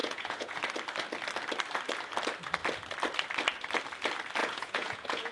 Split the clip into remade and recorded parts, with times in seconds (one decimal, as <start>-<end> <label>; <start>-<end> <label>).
0.0-0.6 remade; 0.6-4.4 recorded; 4.4-5.3 remade